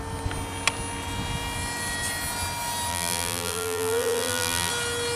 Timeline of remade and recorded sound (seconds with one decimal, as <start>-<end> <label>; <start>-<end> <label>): 0.0-2.9 recorded; 2.9-4.7 remade; 4.7-5.2 recorded